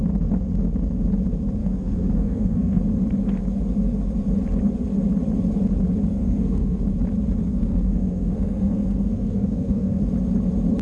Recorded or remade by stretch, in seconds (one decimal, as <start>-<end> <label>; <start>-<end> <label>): 0.0-1.6 recorded; 1.6-2.8 remade; 2.8-6.1 recorded; 6.1-6.8 remade; 6.8-7.4 recorded; 7.4-10.0 remade; 10.0-10.8 recorded